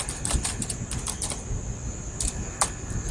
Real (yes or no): yes